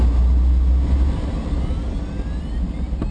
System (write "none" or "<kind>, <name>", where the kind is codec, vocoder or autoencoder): none